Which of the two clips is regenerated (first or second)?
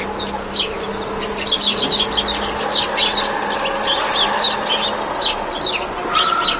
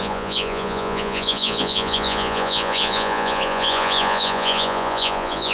second